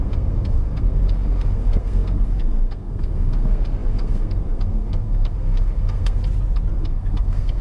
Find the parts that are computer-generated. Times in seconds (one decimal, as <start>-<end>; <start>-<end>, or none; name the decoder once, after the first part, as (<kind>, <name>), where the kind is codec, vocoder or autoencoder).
0.0-6.2 (codec, SNAC); 6.7-7.6